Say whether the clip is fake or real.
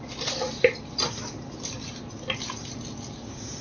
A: real